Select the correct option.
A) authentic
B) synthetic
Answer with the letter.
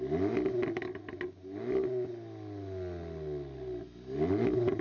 A